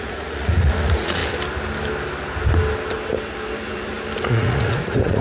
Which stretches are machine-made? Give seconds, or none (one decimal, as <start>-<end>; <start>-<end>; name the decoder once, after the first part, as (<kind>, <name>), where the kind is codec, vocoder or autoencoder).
0.0-1.2 (vocoder, Vocos); 4.3-5.2